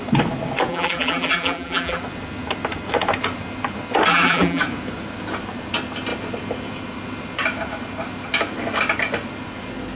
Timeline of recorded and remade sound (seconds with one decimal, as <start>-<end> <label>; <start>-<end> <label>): 0.0-0.7 recorded; 0.7-2.0 remade; 2.0-4.1 recorded; 4.1-4.6 remade; 4.6-9.9 recorded